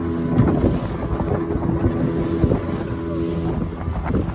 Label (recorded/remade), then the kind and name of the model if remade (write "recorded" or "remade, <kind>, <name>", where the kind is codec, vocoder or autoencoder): recorded